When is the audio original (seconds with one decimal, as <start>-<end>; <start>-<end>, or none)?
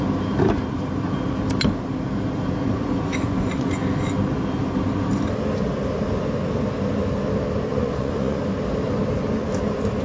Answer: 0.0-2.7; 3.8-7.7; 8.4-10.0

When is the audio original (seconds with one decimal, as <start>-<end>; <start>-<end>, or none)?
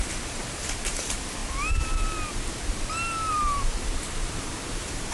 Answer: 1.4-3.3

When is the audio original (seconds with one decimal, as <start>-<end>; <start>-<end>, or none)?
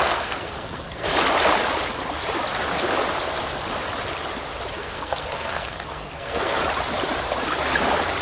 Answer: 1.1-4.7; 6.6-8.2